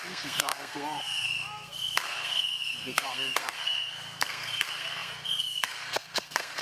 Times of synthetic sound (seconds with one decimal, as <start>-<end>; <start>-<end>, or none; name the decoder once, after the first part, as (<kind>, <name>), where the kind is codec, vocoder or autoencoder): 0.0-6.6 (codec, SNAC)